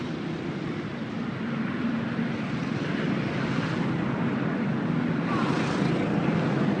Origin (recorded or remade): recorded